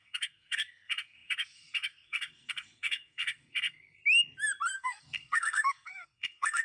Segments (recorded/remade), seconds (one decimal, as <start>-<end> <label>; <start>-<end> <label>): 0.0-4.0 remade; 4.0-4.7 recorded; 4.7-6.6 remade